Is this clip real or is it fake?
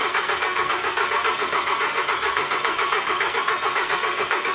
fake